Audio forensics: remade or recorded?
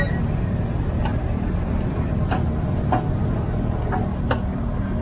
recorded